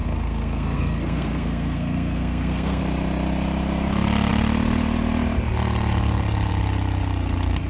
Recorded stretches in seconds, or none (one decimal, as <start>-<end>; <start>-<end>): 2.8-7.7

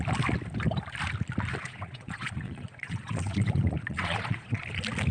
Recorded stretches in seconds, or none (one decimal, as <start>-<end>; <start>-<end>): 0.0-1.5; 4.6-5.1